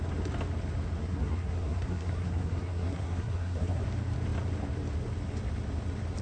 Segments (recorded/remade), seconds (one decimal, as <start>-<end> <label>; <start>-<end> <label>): 0.0-1.0 recorded; 1.0-3.8 remade; 3.8-6.2 recorded